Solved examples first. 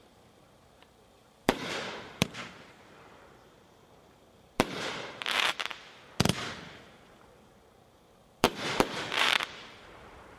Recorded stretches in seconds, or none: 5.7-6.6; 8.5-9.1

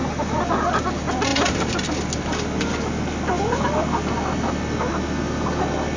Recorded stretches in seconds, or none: 0.0-6.0

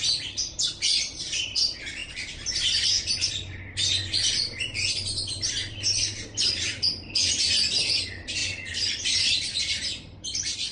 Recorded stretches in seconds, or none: 0.0-8.4; 9.6-10.7

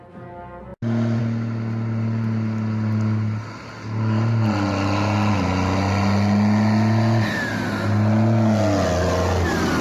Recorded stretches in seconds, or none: 0.0-9.8

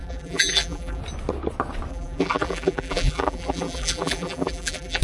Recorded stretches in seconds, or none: 1.0-1.9

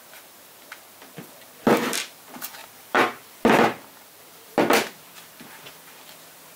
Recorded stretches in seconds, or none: 0.0-2.6; 5.8-6.6

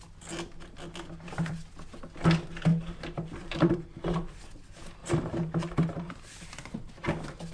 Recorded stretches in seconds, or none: 0.0-2.7; 4.4-5.0; 6.1-7.5